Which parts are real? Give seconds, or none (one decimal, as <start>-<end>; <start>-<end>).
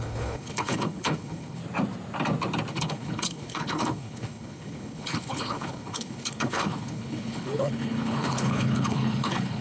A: 1.6-2.7